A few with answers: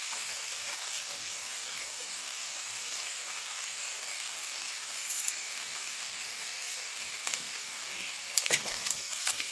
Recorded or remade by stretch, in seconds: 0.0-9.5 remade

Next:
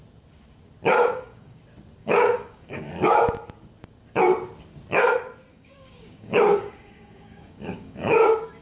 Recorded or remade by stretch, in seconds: 0.0-1.1 recorded; 1.1-1.6 remade; 1.6-2.0 recorded; 2.0-2.9 remade; 2.9-5.5 recorded; 5.5-8.6 remade

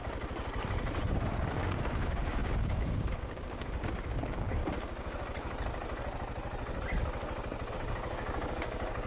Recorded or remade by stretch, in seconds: 0.0-1.5 recorded; 1.5-4.6 remade; 4.6-7.7 recorded; 7.7-9.1 remade